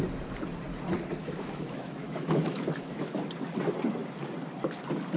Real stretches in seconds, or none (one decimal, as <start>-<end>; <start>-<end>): 0.0-1.2; 3.2-5.2